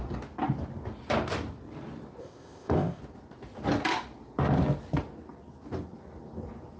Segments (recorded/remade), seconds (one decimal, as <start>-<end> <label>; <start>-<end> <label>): 0.0-2.2 recorded; 2.2-3.0 remade; 3.0-6.8 recorded